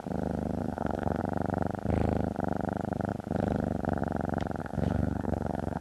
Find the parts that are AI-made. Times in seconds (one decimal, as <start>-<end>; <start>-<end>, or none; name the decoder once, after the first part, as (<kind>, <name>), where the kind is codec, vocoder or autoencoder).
0.6-1.2 (codec, SNAC); 4.6-5.8